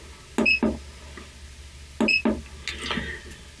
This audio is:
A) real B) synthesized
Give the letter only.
A